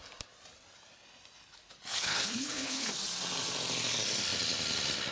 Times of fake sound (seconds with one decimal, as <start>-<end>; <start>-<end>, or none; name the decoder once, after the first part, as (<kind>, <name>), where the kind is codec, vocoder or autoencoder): 1.9-2.9 (codec, HILCodec)

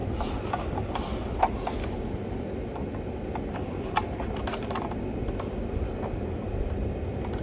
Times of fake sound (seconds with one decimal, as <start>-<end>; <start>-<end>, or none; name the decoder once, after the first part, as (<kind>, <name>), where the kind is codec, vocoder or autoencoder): none

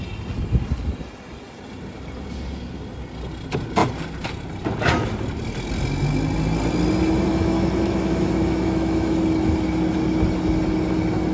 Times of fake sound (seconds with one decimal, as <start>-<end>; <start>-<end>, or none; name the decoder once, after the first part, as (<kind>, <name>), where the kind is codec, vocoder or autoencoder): 7.3-9.2 (autoencoder, DAC-VAE)

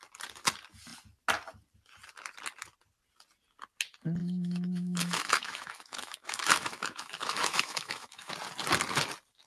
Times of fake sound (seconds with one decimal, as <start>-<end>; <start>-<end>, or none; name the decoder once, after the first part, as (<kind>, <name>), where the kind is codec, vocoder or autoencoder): 4.2-8.3 (autoencoder, DAC-VAE)

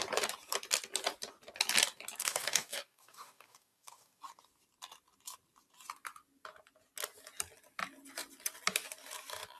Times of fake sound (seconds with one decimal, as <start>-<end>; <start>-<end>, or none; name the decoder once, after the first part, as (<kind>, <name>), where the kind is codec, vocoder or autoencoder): 2.2-4.2 (codec, DAC)

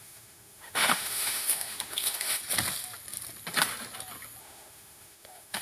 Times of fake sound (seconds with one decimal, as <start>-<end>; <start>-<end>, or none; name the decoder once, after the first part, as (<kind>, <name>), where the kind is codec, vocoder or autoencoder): 0.0-2.4 (autoencoder, DAC-VAE); 4.4-5.6

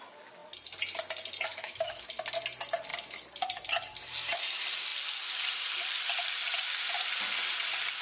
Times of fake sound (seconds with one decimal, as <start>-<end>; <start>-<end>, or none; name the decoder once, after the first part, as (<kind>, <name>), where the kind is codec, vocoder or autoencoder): 1.5-2.1 (autoencoder, DAC-VAE)

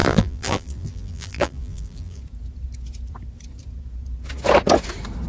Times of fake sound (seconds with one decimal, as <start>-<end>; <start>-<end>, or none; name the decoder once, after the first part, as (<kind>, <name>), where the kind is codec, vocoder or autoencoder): 0.0-2.2 (vocoder, BigVGAN v2)